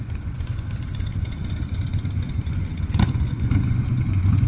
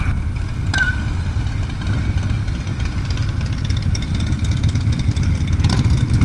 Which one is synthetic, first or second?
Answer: first